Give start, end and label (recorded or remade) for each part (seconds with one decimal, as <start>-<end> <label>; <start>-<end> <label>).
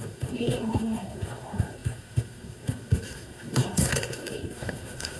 0.0-5.2 remade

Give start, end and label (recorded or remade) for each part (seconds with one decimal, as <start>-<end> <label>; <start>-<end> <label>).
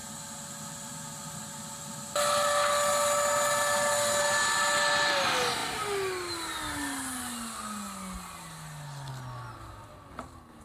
0.0-10.6 recorded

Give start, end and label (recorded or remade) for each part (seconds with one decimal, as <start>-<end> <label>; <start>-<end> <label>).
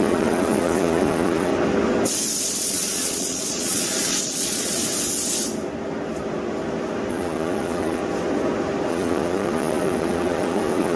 0.0-1.5 remade; 1.5-2.4 recorded; 2.4-4.8 remade; 4.8-7.1 recorded; 7.1-8.0 remade; 8.0-8.9 recorded; 8.9-11.0 remade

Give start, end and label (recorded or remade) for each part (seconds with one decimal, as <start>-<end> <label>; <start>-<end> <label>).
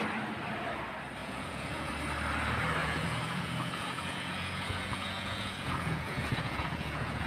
0.0-1.2 recorded; 1.2-1.9 remade; 1.9-2.8 recorded; 2.8-7.3 remade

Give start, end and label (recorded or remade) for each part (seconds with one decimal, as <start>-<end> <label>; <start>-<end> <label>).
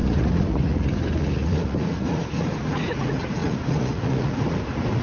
0.0-5.0 remade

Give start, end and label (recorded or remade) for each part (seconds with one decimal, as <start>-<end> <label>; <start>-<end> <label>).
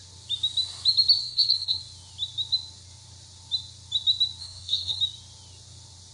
0.0-1.2 recorded; 1.2-1.8 remade; 1.8-4.4 recorded; 4.4-5.0 remade; 5.0-6.1 recorded